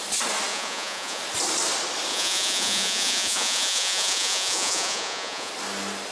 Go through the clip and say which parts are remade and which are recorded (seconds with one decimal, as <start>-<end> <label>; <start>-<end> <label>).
0.0-0.5 recorded; 0.5-1.2 remade; 1.2-2.1 recorded; 2.1-5.5 remade; 5.5-6.1 recorded